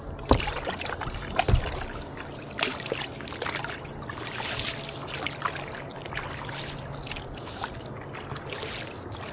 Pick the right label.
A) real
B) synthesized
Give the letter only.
A